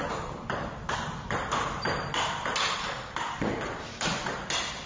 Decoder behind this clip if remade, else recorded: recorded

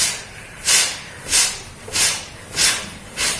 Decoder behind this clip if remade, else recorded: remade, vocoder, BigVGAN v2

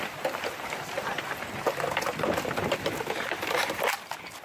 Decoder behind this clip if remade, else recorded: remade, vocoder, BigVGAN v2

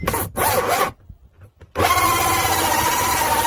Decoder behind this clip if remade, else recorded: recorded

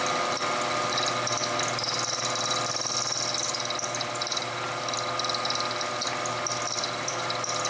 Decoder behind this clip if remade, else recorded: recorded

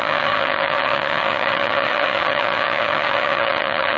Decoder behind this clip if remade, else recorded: remade, vocoder, HiFi-GAN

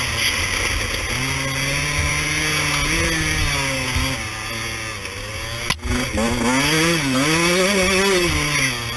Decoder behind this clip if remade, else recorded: recorded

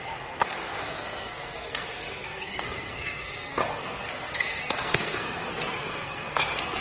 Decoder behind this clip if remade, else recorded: remade, codec, SNAC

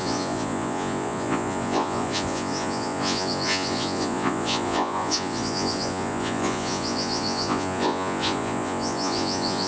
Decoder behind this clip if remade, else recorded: remade, vocoder, Vocos